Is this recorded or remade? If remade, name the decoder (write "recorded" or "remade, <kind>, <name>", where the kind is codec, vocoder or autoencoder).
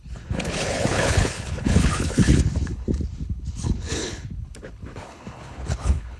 remade, codec, HILCodec